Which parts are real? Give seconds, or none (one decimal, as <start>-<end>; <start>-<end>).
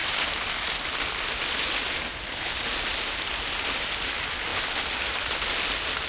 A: 0.0-6.1